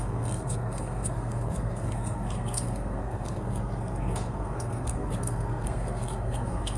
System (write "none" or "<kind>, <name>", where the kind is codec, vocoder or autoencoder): codec, SNAC